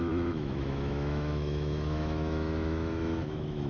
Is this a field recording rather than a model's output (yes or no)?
no